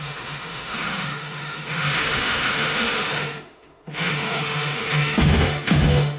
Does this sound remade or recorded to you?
remade